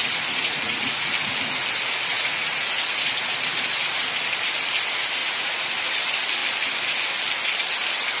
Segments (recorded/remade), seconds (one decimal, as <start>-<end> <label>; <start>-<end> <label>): 0.0-1.1 remade; 1.1-2.1 recorded; 2.1-3.1 remade; 3.1-5.2 recorded; 5.2-5.9 remade; 5.9-8.2 recorded